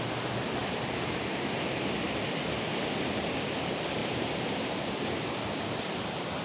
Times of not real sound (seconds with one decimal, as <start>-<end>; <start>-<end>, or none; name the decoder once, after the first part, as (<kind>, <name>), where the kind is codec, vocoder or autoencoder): 0.6-1.8 (vocoder, BigVGAN v2); 4.0-4.9

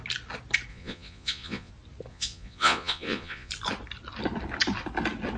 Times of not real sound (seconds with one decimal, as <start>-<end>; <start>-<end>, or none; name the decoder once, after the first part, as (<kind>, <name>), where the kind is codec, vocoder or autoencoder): 0.7-1.7 (vocoder, Vocos); 2.1-3.5

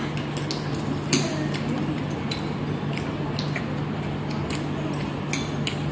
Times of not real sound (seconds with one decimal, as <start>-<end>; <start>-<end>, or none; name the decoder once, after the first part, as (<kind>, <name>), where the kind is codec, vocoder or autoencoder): none

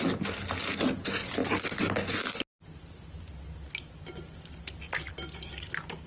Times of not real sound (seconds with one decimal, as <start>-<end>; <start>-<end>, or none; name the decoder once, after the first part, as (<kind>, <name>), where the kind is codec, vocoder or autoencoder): none

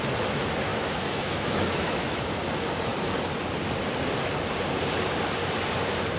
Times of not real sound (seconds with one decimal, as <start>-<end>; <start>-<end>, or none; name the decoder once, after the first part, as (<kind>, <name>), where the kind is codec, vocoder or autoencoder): 0.7-2.4 (autoencoder, DAC-VAE)

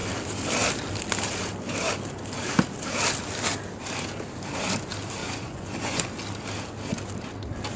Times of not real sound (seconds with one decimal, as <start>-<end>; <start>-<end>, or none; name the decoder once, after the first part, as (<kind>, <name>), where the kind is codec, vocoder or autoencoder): 5.2-6.1 (vocoder, Vocos)

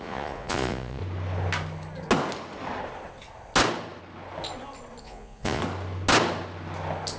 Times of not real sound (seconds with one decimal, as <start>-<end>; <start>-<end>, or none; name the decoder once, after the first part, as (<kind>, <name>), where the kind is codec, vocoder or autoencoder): 0.0-1.0 (vocoder, Vocos); 5.0-5.6

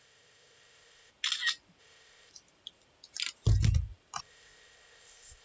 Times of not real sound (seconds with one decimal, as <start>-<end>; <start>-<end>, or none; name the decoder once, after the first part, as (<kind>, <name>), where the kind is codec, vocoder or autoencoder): 0.0-1.1 (codec, ZipCodec); 1.8-2.3; 4.2-5.4